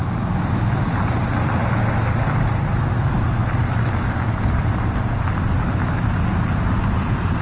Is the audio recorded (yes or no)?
yes